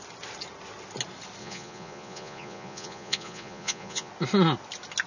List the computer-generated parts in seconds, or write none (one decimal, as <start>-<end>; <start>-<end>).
1.4-4.1